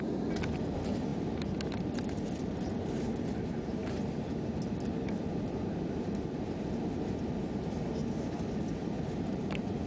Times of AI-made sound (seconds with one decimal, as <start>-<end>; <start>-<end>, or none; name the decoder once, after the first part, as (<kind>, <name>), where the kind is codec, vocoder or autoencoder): 0.0-9.9 (vocoder, BigVGAN v2)